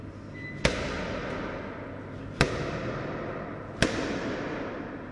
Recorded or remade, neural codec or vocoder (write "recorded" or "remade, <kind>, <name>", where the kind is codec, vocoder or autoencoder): recorded